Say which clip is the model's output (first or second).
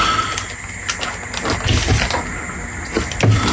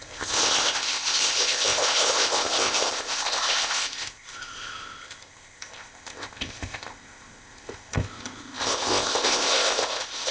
second